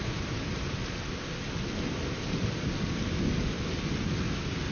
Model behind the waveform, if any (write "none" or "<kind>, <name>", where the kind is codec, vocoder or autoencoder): none